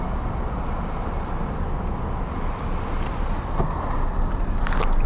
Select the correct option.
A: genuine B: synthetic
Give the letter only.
A